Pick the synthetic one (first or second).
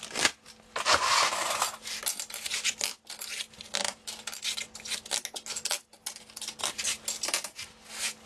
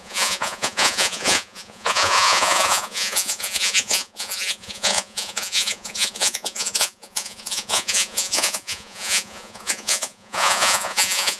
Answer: second